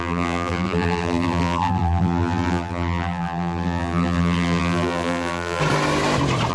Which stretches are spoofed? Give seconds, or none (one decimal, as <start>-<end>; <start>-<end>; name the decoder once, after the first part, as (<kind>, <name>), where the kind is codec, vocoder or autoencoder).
0.0-5.6 (vocoder, BigVGAN v2)